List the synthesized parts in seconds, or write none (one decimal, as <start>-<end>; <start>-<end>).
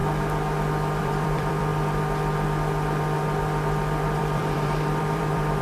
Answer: 1.0-1.7; 4.2-5.6